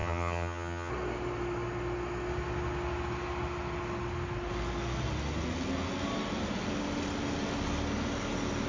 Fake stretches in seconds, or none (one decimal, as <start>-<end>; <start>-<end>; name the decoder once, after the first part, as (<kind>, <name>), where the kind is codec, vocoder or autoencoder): 0.0-0.9 (vocoder, HiFi-GAN)